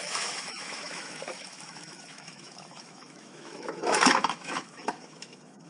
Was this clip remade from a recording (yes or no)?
yes